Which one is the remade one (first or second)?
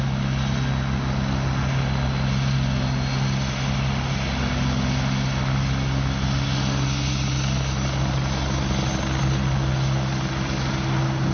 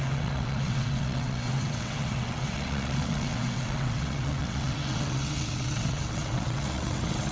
second